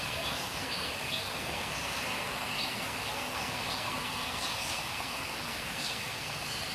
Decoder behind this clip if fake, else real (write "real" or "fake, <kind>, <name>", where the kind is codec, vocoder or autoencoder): fake, codec, SNAC